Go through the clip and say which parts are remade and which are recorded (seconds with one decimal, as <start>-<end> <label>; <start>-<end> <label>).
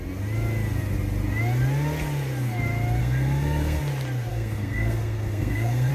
0.0-3.0 recorded; 3.0-3.8 remade; 3.8-4.3 recorded; 4.3-5.9 remade